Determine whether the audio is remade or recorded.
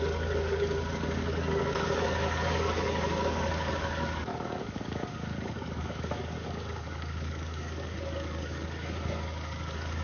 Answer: remade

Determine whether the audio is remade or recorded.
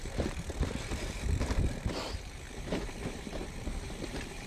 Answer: remade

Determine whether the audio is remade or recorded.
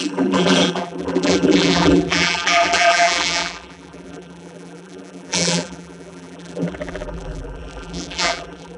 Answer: remade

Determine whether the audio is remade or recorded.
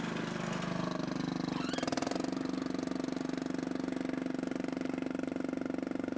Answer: recorded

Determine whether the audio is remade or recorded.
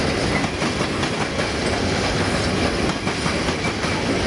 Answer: recorded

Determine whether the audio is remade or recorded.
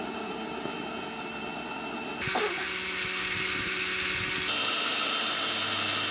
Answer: recorded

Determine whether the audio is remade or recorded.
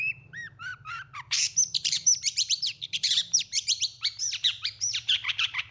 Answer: remade